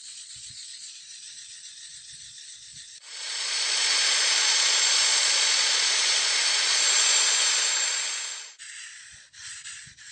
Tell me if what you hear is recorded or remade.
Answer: remade